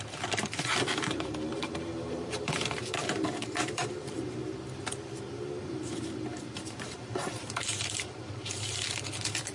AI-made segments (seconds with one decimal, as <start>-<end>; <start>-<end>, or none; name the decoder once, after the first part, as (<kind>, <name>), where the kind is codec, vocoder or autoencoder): 0.0-4.4 (vocoder, BigVGAN v2); 5.6-9.5